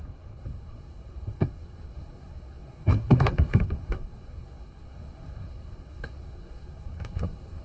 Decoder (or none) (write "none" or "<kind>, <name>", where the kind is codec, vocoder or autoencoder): codec, SNAC